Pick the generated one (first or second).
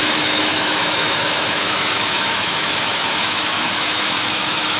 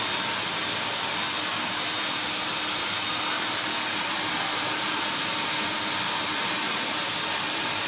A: first